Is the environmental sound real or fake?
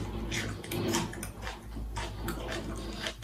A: real